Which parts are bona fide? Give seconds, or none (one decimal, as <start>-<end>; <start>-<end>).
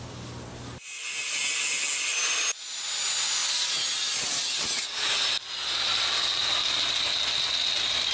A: 0.0-8.1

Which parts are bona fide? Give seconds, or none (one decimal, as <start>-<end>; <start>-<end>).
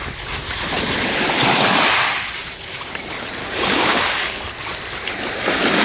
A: 0.0-3.4; 4.4-5.8